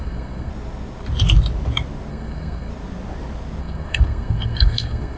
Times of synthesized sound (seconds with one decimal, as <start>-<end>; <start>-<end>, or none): 0.0-0.5; 2.1-2.7; 3.6-5.2